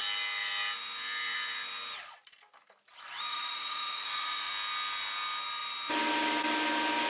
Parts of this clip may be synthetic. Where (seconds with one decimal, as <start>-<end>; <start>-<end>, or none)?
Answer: 3.3-4.5